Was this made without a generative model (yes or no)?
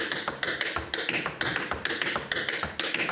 yes